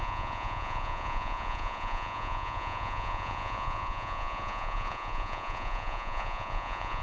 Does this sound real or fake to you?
fake